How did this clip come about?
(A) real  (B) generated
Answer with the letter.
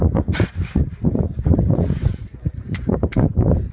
B